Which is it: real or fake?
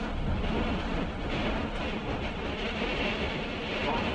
real